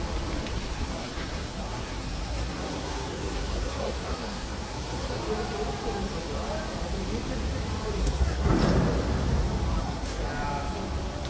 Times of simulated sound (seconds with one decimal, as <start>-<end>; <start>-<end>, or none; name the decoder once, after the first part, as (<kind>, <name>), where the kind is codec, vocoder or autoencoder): 0.5-5.2 (codec, SNAC); 8.0-8.6; 9.8-10.3